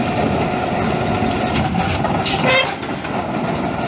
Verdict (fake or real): real